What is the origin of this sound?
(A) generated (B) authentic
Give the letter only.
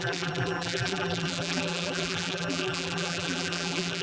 A